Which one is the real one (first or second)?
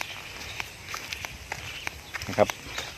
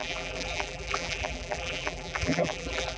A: first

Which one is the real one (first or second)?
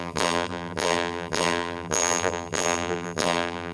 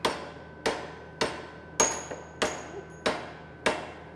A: second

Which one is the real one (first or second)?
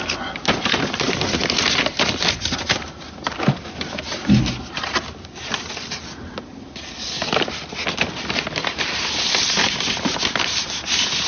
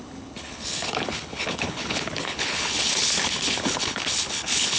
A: first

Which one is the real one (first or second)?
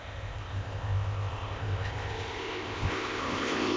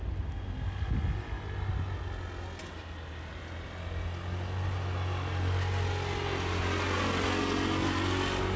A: second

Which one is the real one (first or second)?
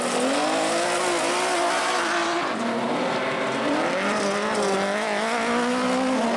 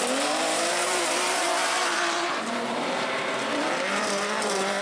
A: first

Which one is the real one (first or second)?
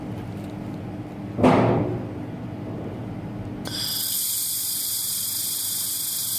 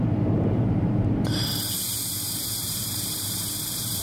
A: first